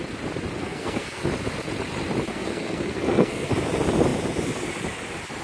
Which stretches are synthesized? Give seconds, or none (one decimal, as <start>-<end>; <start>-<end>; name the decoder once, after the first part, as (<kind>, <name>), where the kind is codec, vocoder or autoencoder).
0.6-1.2 (codec, SNAC); 2.3-3.5